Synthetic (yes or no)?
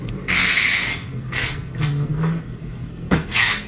yes